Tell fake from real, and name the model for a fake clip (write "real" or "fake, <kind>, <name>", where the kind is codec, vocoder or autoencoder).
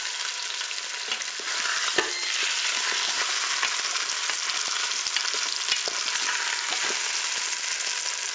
real